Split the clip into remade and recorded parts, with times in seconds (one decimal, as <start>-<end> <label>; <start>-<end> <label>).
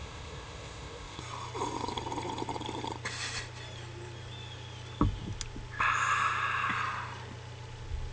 0.0-1.2 remade; 1.2-8.1 recorded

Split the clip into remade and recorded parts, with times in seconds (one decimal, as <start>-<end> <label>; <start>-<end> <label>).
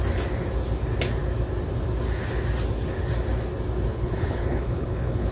0.0-3.9 recorded; 3.9-5.3 remade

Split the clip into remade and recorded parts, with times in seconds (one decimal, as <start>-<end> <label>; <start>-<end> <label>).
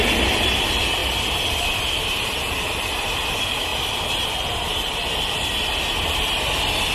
0.0-3.7 recorded; 3.7-4.6 remade; 4.6-6.9 recorded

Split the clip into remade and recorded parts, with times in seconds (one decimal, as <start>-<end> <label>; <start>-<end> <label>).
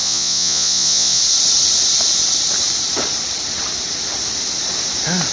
0.0-1.2 remade; 1.2-5.3 recorded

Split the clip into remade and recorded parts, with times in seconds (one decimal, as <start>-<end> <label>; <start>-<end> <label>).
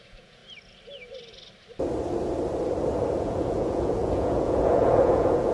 0.0-0.4 remade; 0.4-3.2 recorded; 3.2-5.5 remade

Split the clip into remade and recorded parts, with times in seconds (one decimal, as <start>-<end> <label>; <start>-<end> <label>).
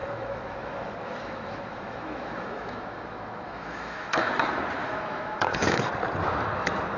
0.0-4.2 remade; 4.2-4.8 recorded; 4.8-5.9 remade; 5.9-7.0 recorded